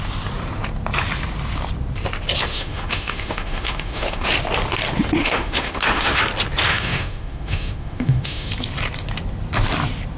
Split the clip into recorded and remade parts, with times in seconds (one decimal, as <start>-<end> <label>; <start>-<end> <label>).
0.0-2.5 recorded; 2.5-4.3 remade; 4.3-5.2 recorded; 5.2-6.2 remade; 6.2-6.7 recorded; 6.7-8.5 remade; 8.5-10.2 recorded